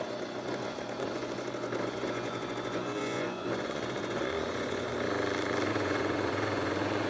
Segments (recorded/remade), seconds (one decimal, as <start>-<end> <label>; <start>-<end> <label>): 0.0-4.9 remade; 4.9-5.7 recorded; 5.7-7.1 remade